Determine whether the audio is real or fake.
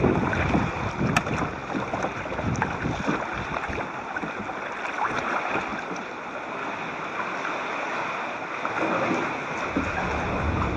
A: real